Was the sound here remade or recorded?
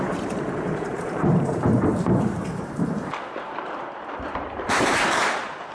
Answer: remade